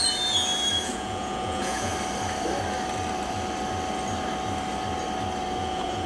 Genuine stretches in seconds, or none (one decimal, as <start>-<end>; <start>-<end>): 0.0-0.7; 1.9-5.6